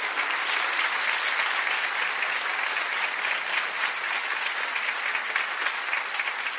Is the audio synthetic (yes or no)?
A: no